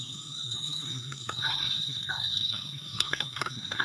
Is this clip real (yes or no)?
no